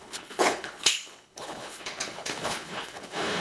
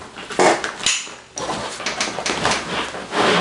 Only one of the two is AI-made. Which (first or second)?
first